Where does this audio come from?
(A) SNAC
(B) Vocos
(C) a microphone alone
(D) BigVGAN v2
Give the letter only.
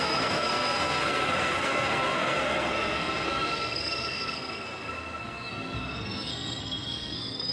A